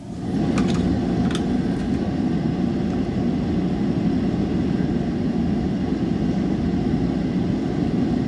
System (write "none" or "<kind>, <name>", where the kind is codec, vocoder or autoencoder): none